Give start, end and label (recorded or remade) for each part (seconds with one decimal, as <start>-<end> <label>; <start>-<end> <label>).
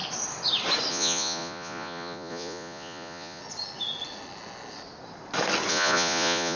0.0-0.9 recorded; 0.9-3.4 remade; 3.4-5.7 recorded; 5.7-6.6 remade